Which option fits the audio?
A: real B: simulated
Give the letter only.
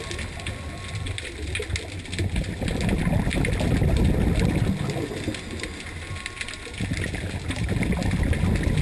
A